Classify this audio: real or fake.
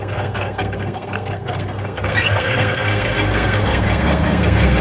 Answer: fake